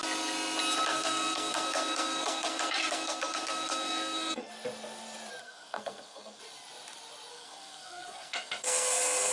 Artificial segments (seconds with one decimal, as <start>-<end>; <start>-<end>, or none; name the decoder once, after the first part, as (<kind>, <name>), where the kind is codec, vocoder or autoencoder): 0.9-4.5 (codec, SNAC); 5.4-6.4; 7.3-9.3